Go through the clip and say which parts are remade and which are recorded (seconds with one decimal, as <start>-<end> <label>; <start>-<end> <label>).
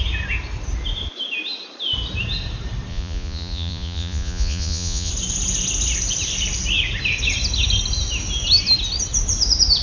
0.0-2.9 recorded; 2.9-5.1 remade; 5.1-9.8 recorded